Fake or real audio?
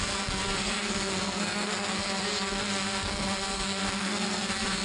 fake